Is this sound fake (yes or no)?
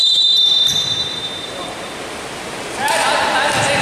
yes